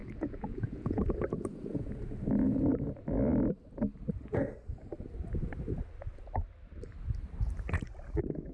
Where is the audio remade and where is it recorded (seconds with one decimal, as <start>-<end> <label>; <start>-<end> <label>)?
0.0-1.9 remade; 1.9-8.5 recorded